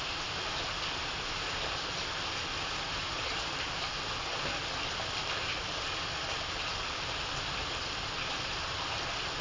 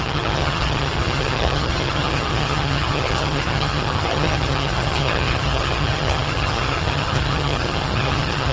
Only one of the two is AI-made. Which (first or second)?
second